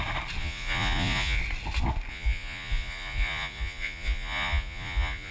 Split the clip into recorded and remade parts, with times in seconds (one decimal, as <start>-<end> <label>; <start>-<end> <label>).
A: 0.0-0.4 recorded; 0.4-1.4 remade; 1.4-2.1 recorded; 2.1-5.3 remade